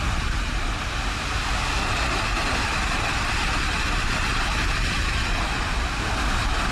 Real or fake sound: real